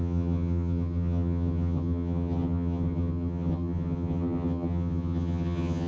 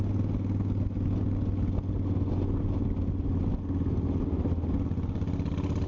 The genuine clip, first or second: second